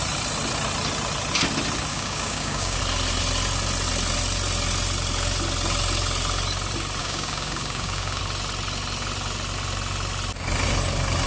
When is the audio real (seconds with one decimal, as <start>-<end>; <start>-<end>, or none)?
0.0-1.9; 2.8-7.0; 8.2-11.3